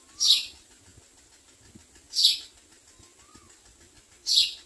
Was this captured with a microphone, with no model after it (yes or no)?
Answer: yes